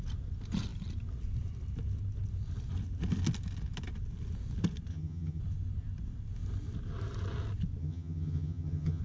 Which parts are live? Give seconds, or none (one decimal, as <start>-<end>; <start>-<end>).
0.0-4.9; 5.4-7.8